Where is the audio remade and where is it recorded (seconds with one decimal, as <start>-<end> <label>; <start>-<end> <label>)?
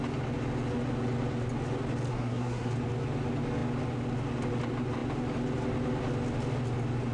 0.0-2.1 recorded; 2.1-2.7 remade; 2.7-7.1 recorded